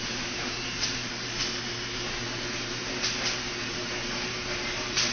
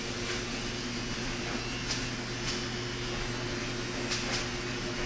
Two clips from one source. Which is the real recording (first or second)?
second